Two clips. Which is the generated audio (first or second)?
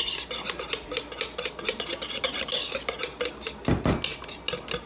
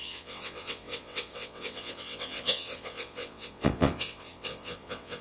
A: second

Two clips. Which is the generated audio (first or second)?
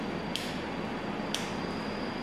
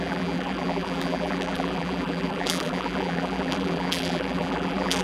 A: second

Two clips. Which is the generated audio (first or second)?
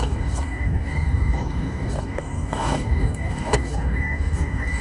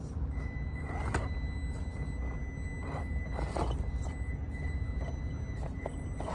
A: first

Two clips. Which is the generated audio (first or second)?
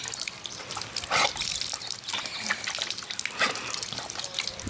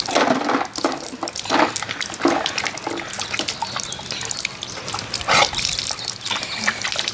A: first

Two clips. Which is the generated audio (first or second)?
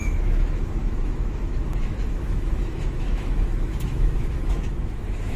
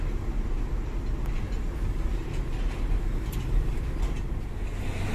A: first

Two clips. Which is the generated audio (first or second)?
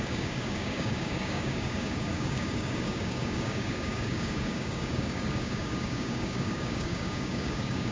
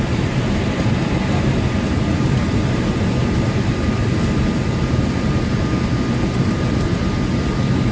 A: first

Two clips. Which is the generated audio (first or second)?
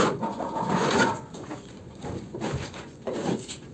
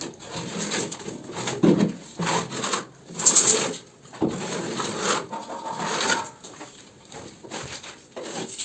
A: first